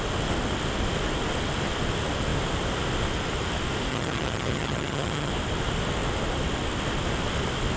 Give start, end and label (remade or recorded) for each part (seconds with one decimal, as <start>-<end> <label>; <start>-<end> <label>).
0.0-3.9 recorded; 3.9-5.3 remade; 5.3-7.8 recorded